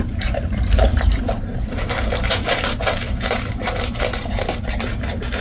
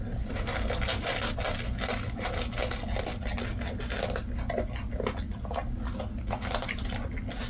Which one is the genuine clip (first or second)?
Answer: second